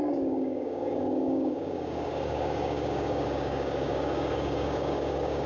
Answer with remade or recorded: remade